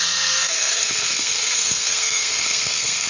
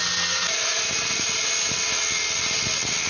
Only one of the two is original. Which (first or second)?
second